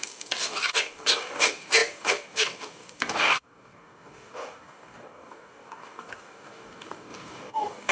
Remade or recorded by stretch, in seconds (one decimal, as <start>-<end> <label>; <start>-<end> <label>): 0.0-7.9 remade